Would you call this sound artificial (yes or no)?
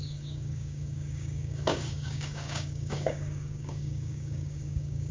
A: yes